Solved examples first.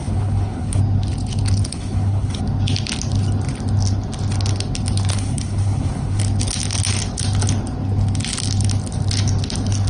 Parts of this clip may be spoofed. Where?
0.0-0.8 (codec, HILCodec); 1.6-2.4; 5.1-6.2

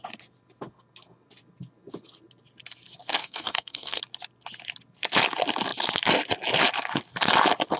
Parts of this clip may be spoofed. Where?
3.2-4.0 (codec, SNAC)

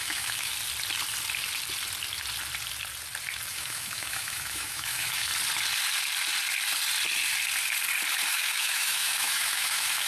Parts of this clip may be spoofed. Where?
0.0-0.5 (autoencoder, DAC-VAE); 3.5-5.3; 8.3-10.1

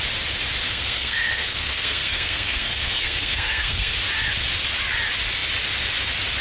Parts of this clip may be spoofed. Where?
0.6-3.9 (codec, SNAC)

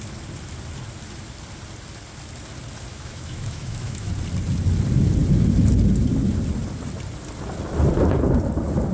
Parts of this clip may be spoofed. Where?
2.9-4.1 (autoencoder, DAC-VAE)

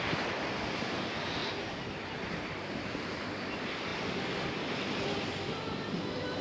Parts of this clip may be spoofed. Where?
0.0-1.4 (vocoder, BigVGAN v2); 3.2-3.9